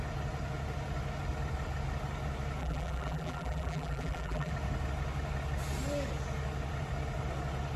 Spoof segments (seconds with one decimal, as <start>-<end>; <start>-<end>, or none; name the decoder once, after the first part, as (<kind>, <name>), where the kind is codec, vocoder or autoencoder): 2.6-4.5 (vocoder, BigVGAN v2)